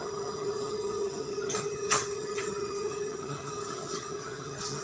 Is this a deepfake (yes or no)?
yes